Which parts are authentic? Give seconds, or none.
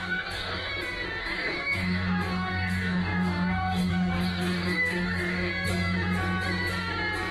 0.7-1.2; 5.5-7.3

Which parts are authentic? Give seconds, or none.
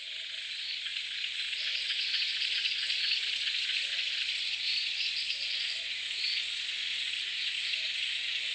none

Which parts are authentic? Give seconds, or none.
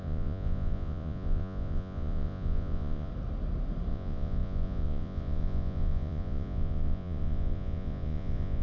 3.1-3.9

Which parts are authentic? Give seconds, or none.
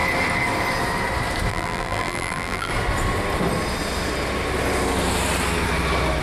0.0-1.5; 2.7-6.2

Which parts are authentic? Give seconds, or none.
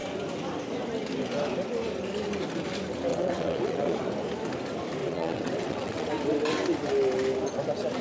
0.0-3.1; 4.1-5.0; 6.1-8.0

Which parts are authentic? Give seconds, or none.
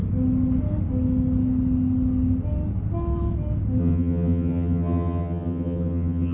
0.0-3.8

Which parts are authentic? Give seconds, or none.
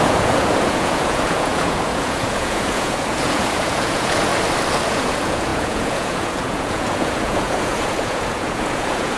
4.3-4.9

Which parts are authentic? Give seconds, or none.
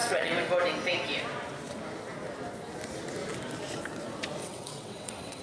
0.5-4.4